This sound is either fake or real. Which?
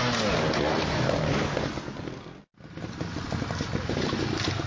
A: real